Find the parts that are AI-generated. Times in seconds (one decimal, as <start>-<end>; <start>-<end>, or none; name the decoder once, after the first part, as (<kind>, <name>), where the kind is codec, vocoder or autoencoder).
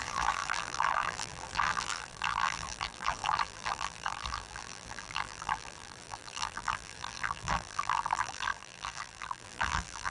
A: 0.0-10.1 (vocoder, BigVGAN v2)